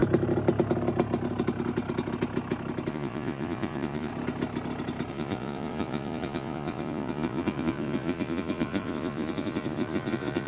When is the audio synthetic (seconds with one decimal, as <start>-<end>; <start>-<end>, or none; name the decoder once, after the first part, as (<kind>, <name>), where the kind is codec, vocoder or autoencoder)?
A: 2.9-4.1 (vocoder, Vocos); 5.1-10.5